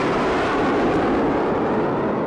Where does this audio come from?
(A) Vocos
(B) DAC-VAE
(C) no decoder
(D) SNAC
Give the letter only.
C